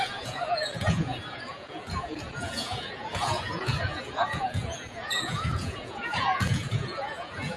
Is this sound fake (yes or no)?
yes